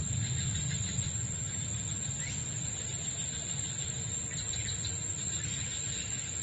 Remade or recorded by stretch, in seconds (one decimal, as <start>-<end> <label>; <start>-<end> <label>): 0.0-2.9 recorded; 2.9-5.1 remade; 5.1-6.4 recorded